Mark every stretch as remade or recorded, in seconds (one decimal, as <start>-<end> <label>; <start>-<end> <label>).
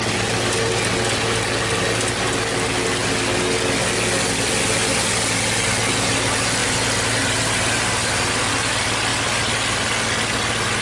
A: 0.0-10.8 recorded